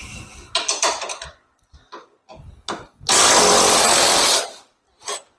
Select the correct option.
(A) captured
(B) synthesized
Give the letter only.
A